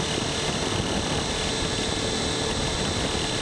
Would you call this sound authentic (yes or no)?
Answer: yes